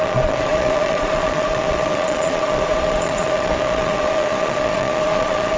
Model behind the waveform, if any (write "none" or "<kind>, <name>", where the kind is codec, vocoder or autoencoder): vocoder, Vocos